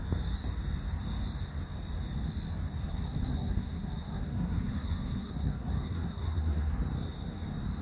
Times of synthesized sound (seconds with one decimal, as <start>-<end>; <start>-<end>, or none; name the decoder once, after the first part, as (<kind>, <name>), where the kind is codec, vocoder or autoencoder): 2.8-6.7 (codec, SNAC)